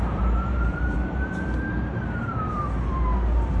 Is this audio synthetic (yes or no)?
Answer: yes